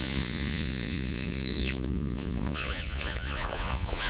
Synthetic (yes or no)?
yes